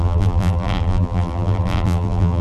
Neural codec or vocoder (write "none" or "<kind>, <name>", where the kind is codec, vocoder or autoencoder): vocoder, BigVGAN v2